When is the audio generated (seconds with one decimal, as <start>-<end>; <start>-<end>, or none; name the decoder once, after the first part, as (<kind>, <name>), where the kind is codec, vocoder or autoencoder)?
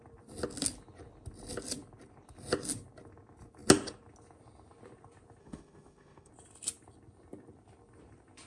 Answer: 5.4-6.3 (autoencoder, DAC-VAE)